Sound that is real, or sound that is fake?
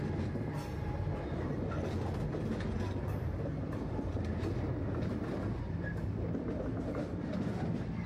real